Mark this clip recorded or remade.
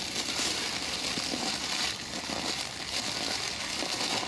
recorded